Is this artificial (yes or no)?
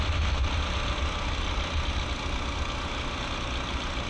no